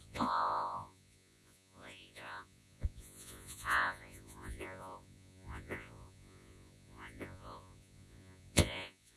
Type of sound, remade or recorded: remade